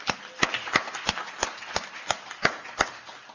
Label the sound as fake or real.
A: real